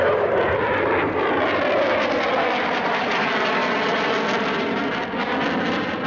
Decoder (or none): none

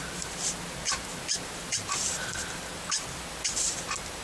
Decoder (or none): none